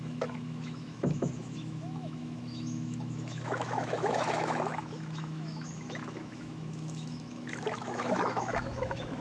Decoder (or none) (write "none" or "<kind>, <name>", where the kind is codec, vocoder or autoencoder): autoencoder, DAC-VAE